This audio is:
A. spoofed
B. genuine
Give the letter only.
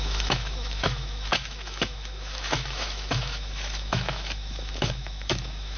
A